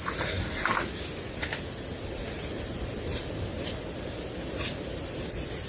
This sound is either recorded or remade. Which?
recorded